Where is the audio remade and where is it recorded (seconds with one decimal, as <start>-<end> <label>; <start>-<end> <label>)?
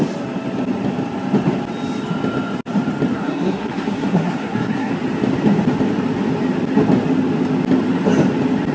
0.0-3.1 recorded; 3.1-4.9 remade; 4.9-8.7 recorded